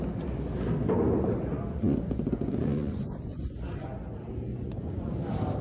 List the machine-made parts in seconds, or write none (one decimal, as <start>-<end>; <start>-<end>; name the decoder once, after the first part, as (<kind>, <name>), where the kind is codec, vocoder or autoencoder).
1.5-4.0 (vocoder, Vocos); 4.5-5.1